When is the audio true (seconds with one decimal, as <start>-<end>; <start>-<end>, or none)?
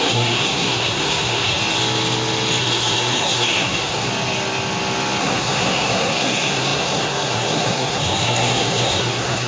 1.6-2.6; 4.1-5.2